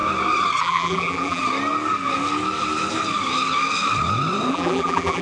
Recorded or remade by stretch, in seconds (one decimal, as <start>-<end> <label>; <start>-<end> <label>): 0.0-0.6 recorded; 0.6-1.4 remade; 1.4-4.5 recorded; 4.5-5.2 remade